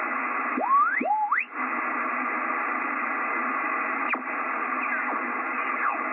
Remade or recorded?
recorded